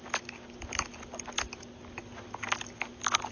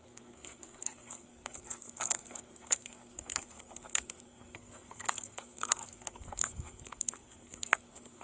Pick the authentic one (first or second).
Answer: first